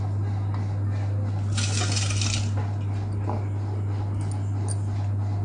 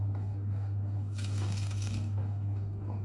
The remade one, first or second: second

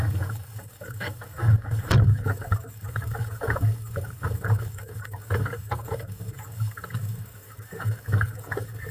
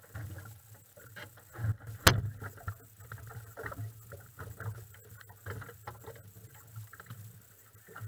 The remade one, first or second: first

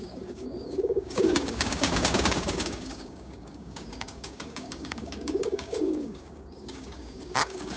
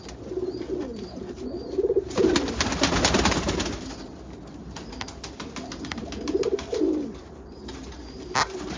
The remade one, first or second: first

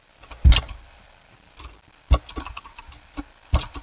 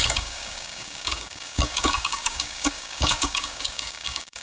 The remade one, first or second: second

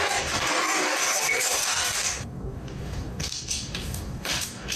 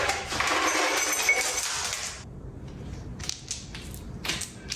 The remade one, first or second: first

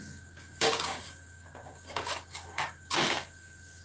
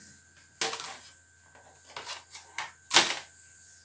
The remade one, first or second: first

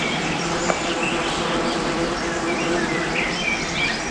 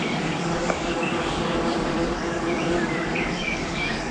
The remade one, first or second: second